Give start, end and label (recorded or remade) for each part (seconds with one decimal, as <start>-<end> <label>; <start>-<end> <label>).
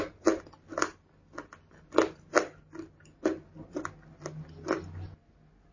0.0-0.7 recorded; 0.7-4.1 remade; 4.1-5.7 recorded